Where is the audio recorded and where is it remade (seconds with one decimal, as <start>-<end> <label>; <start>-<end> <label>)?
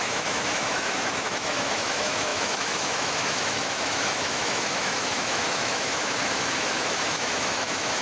0.0-8.0 remade